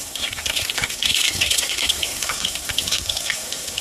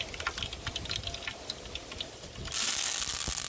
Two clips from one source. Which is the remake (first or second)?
first